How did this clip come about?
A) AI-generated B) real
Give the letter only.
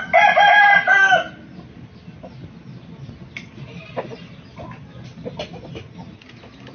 B